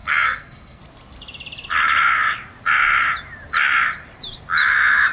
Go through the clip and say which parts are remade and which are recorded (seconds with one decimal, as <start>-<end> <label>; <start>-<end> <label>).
0.0-0.8 remade; 0.8-5.1 recorded